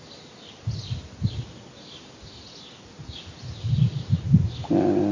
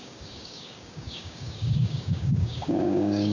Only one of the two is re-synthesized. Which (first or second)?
second